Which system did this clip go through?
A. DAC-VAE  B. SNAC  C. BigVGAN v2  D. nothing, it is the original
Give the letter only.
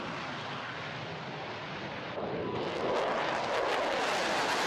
D